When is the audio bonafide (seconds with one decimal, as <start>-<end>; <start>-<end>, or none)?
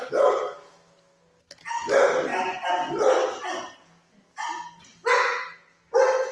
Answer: 0.0-6.3